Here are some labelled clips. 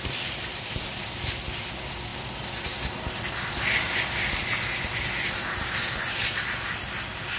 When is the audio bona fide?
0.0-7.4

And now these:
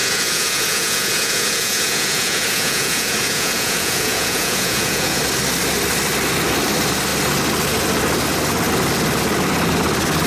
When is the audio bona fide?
5.2-10.3

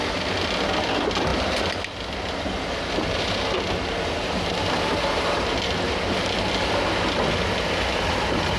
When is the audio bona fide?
0.0-8.6

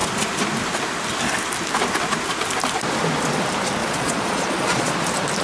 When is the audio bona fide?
0.0-3.8; 4.9-5.4

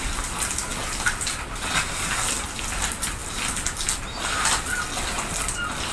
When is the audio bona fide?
0.0-5.9

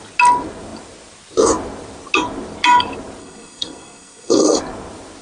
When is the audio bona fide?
0.0-3.2; 4.6-5.2